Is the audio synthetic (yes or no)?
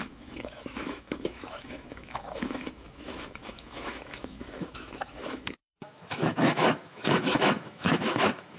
yes